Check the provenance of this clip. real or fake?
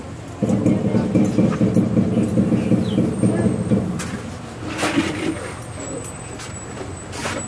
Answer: real